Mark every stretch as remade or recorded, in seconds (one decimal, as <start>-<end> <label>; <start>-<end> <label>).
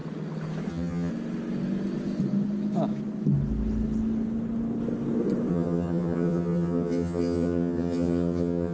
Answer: 0.0-0.7 recorded; 0.7-1.1 remade; 1.1-5.5 recorded; 5.5-8.7 remade